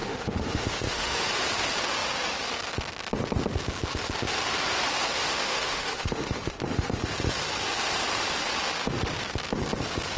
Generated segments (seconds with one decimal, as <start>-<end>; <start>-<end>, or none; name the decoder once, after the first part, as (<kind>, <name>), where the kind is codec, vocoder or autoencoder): 0.0-1.3 (autoencoder, DAC-VAE); 5.1-7.0